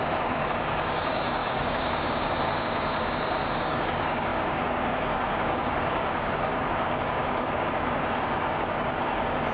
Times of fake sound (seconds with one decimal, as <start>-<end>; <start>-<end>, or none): 0.0-9.5